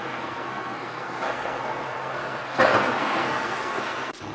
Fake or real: fake